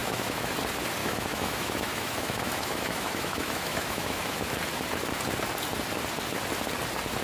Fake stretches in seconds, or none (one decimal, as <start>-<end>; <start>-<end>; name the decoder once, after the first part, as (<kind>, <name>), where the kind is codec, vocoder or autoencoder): 0.0-0.5 (autoencoder, DAC-VAE); 1.0-4.5